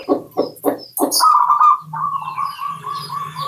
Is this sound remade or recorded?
recorded